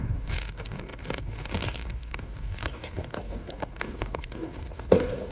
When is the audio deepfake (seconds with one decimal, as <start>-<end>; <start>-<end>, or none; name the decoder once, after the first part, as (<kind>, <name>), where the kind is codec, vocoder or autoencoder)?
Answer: 0.0-5.3 (codec, DAC)